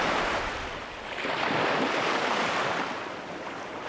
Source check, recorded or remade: recorded